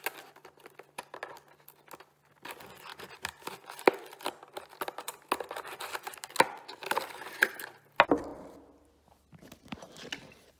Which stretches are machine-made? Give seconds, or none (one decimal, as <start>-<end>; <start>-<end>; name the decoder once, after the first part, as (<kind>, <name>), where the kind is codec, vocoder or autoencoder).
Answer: none